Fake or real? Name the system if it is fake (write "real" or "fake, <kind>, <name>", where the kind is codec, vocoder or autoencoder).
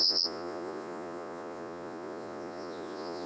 fake, vocoder, Vocos